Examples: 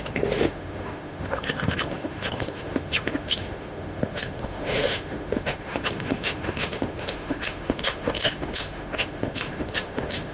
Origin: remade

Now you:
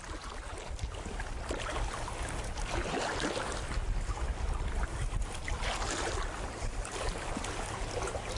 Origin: recorded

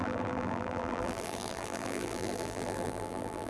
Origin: remade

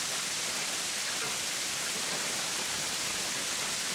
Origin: remade